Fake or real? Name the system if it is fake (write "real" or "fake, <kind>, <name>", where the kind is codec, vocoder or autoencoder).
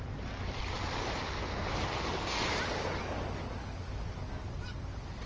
real